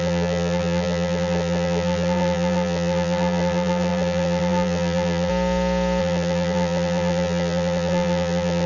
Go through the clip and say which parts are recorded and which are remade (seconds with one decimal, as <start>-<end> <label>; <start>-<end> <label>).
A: 0.0-5.3 remade; 5.3-6.0 recorded; 6.0-8.7 remade